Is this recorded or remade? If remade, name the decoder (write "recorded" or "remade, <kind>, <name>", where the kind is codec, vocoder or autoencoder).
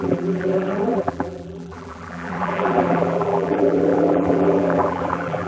remade, vocoder, BigVGAN v2